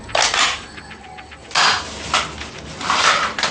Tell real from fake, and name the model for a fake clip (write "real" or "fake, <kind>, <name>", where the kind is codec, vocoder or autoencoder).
real